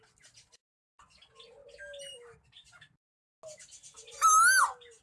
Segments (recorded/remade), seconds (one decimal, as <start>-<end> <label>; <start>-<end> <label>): 0.0-5.0 recorded